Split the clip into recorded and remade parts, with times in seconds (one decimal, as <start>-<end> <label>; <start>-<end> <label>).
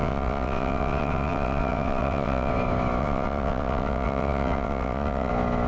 0.0-2.5 remade; 2.5-3.0 recorded; 3.0-5.3 remade; 5.3-5.7 recorded